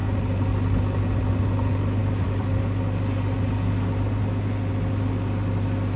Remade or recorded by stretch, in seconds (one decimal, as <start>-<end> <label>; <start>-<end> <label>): 0.0-6.0 recorded